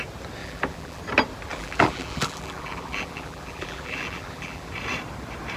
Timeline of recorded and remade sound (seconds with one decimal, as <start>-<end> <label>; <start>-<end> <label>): 0.0-0.4 recorded; 0.4-1.0 remade; 1.0-1.5 recorded; 1.5-4.7 remade; 4.7-5.6 recorded